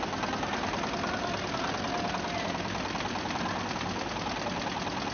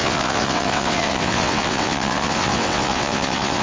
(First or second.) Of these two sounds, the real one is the first